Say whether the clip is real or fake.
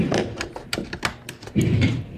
fake